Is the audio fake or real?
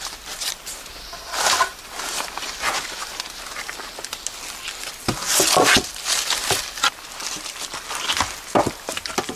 real